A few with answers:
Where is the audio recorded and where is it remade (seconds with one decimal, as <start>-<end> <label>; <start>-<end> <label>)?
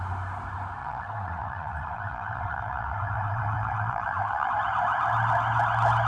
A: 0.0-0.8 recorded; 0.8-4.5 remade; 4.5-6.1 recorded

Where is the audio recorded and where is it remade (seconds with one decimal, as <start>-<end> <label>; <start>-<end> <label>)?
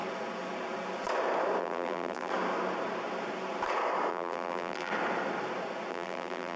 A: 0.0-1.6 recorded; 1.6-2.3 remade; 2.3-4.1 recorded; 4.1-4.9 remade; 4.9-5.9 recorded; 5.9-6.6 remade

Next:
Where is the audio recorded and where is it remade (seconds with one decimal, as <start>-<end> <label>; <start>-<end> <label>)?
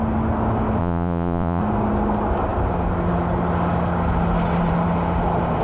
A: 0.0-0.8 recorded; 0.8-1.6 remade; 1.6-5.6 recorded